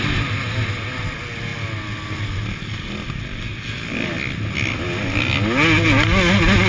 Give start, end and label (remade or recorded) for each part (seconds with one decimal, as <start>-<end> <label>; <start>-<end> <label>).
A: 0.0-6.7 recorded

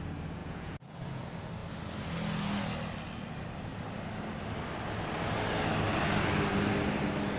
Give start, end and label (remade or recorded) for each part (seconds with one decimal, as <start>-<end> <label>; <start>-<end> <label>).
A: 0.0-0.4 recorded; 0.4-1.2 remade; 1.2-7.4 recorded

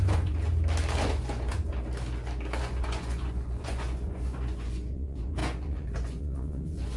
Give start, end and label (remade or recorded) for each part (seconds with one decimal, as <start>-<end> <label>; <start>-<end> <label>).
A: 0.0-0.5 remade; 0.5-1.0 recorded; 1.0-1.7 remade; 1.7-2.6 recorded; 2.6-7.0 remade

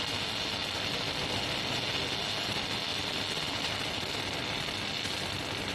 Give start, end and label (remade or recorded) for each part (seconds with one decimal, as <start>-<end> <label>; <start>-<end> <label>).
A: 0.0-5.7 recorded